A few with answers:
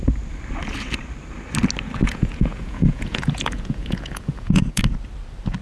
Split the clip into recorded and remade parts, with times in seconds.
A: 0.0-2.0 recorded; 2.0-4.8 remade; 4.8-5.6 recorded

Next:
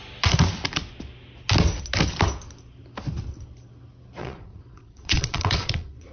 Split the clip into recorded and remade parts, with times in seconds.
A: 0.0-4.2 recorded; 4.2-6.1 remade